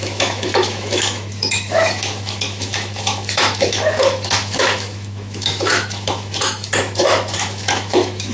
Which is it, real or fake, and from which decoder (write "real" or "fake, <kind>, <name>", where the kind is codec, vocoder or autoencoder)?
fake, autoencoder, DAC-VAE